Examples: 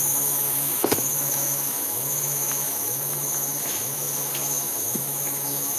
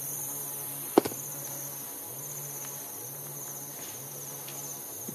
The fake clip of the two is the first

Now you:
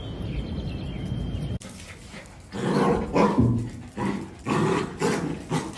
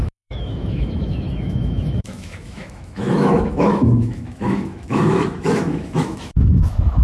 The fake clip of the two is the second